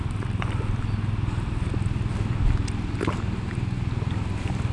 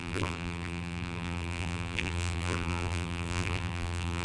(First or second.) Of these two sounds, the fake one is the second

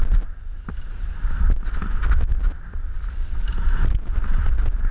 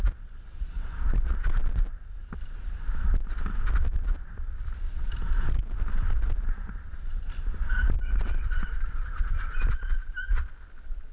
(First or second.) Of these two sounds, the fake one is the second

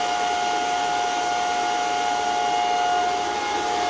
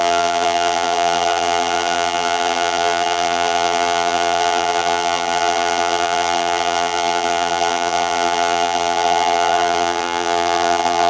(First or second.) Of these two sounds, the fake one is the second